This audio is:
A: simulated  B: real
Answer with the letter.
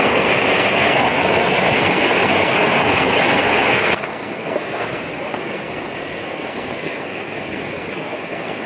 A